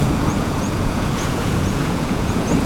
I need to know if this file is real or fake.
fake